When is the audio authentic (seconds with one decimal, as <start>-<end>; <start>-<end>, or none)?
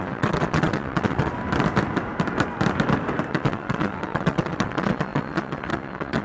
1.3-3.3